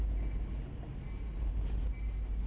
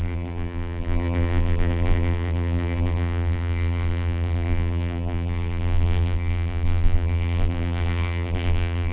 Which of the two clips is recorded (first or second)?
first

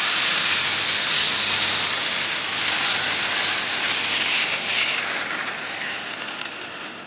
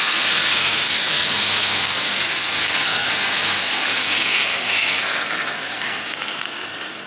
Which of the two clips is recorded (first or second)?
first